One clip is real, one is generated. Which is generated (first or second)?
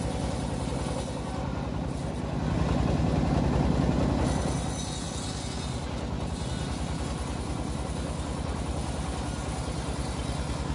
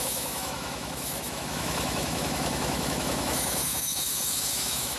second